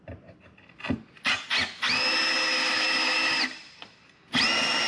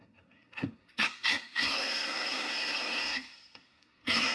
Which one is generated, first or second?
second